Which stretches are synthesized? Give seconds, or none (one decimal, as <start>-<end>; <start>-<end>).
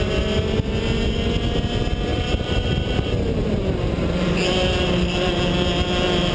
2.1-5.3